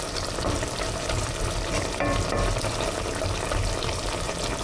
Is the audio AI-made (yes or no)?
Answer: no